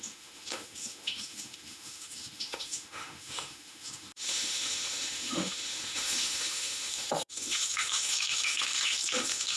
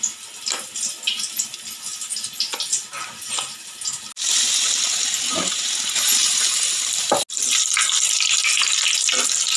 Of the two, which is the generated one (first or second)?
first